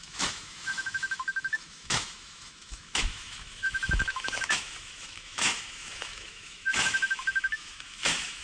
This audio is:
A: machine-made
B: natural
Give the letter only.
A